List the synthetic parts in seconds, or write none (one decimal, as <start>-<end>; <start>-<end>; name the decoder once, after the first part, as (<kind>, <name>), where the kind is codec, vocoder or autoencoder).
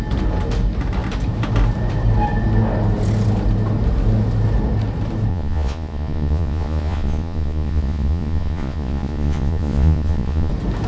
5.3-10.5 (vocoder, Vocos)